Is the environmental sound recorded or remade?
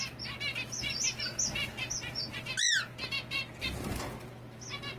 recorded